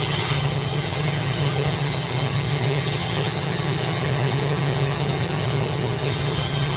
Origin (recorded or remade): remade